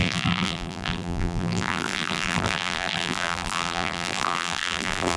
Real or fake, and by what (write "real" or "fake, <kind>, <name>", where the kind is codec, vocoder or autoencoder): fake, vocoder, BigVGAN v2